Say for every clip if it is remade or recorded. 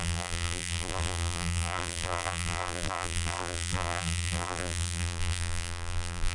remade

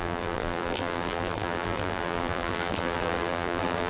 remade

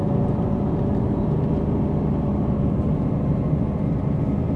remade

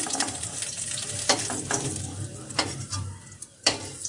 remade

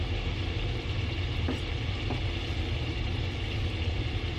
recorded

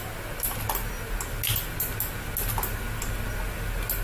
recorded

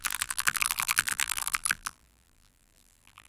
remade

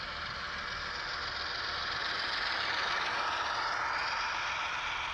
recorded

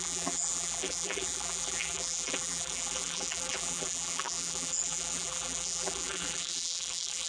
remade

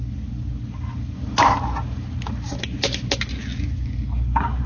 recorded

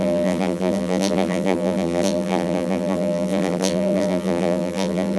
remade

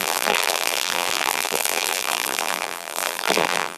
remade